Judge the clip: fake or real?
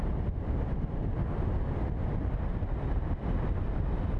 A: real